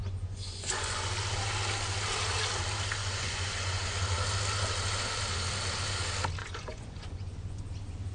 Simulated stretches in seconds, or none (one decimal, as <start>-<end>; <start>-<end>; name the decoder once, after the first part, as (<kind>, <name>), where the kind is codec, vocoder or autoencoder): 0.0-1.1 (vocoder, Vocos); 3.0-4.0; 6.4-7.6

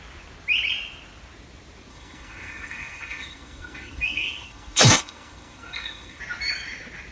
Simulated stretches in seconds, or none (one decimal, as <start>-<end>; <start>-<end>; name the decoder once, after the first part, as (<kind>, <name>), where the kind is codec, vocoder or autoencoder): 1.9-6.2 (codec, SNAC)

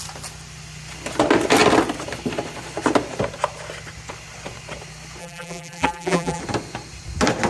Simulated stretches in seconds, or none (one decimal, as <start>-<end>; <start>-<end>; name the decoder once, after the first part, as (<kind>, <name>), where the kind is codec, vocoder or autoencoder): 5.2-6.4 (vocoder, BigVGAN v2)